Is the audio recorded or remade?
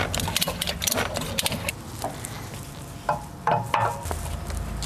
recorded